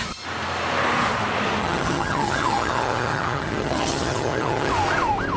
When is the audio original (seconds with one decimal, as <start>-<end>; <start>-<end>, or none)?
0.0-1.6; 4.7-5.4